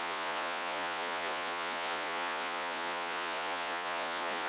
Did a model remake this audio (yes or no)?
yes